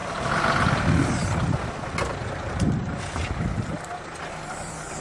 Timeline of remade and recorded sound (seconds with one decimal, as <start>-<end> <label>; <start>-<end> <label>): 0.0-5.0 recorded